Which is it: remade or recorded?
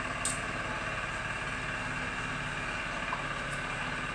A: recorded